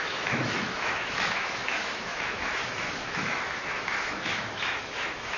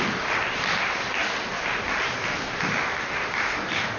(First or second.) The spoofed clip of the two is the first